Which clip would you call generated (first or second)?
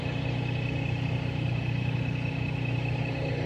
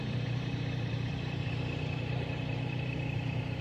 second